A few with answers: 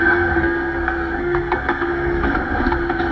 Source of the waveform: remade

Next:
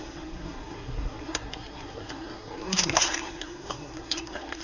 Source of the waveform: remade